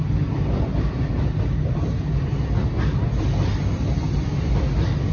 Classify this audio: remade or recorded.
recorded